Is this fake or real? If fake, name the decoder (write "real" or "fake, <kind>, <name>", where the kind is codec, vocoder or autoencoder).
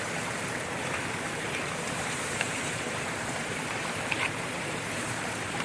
fake, vocoder, BigVGAN v2